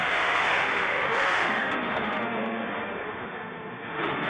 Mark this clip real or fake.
fake